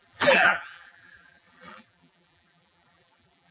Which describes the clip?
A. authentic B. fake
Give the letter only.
B